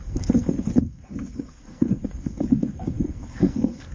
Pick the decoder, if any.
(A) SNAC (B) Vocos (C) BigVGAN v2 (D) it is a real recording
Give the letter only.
A